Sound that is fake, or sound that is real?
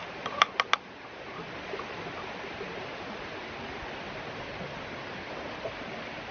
real